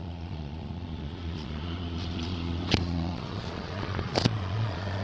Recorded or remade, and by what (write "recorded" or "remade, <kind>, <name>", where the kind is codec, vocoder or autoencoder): remade, vocoder, Vocos